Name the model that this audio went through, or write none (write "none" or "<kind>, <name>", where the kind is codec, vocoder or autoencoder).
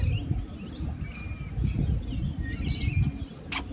none